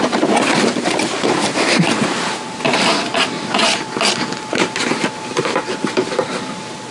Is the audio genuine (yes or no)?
no